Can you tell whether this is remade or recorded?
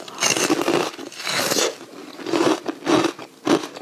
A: recorded